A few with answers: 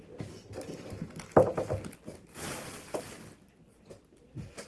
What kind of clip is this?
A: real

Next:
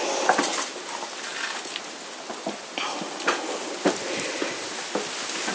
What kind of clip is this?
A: real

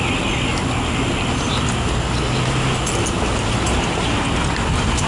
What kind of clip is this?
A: real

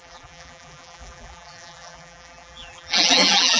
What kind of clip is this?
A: fake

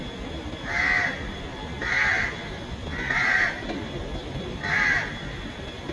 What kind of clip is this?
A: real